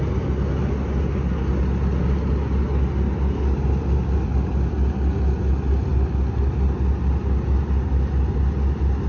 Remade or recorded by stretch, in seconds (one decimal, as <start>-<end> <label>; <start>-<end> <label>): 0.0-9.1 recorded